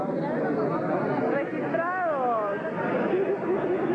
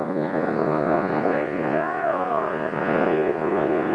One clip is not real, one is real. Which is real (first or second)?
first